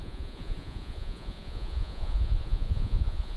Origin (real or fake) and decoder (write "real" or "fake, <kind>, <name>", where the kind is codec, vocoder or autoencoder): fake, vocoder, Vocos